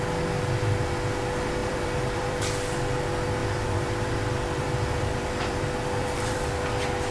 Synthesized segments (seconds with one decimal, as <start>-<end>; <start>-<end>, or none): 1.6-2.4; 3.4-6.5